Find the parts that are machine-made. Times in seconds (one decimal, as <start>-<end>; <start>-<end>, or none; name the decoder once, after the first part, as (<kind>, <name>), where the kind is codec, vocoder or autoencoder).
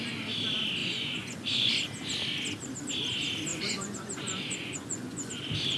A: 0.8-1.7 (vocoder, Vocos); 3.5-5.3